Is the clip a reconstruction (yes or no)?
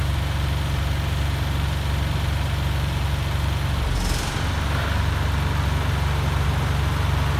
no